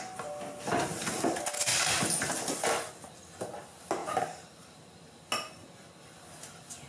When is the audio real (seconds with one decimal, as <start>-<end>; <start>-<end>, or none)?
0.0-1.7; 2.6-4.0; 5.1-6.9